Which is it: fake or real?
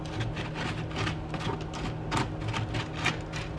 real